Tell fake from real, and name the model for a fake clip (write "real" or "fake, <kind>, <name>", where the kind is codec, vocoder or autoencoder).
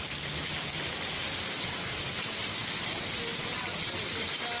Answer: real